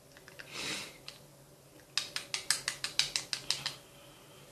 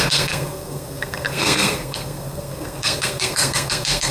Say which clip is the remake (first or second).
second